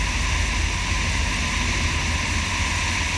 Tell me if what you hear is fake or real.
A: real